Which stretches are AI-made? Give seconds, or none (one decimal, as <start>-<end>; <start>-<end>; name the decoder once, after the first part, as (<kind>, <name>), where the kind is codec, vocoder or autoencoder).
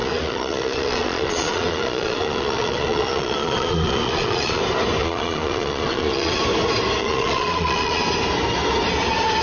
0.0-4.6 (vocoder, Vocos); 5.0-6.4; 7.0-8.0